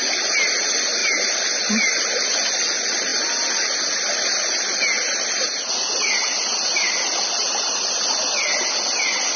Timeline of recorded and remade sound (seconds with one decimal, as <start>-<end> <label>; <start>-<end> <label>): 0.0-9.4 recorded